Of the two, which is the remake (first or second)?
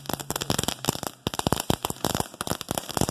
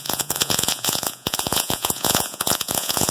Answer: second